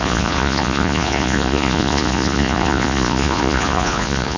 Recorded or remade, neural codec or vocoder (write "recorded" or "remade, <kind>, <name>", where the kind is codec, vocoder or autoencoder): remade, vocoder, Vocos